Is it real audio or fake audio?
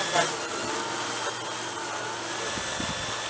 real